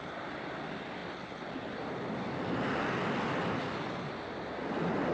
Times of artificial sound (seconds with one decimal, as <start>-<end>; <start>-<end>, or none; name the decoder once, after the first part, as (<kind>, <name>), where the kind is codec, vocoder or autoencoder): none